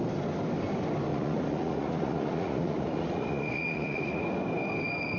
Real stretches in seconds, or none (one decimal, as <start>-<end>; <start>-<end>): 0.0-1.1; 4.2-5.2